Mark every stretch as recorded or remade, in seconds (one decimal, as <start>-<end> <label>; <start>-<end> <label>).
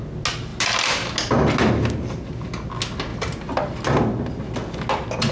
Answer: 0.0-5.3 recorded